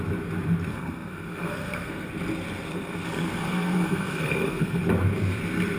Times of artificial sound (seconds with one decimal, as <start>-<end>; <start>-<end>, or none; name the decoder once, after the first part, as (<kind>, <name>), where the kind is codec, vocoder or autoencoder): 0.7-2.1 (codec, SNAC); 2.7-4.8